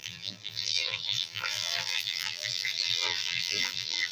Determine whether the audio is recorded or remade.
remade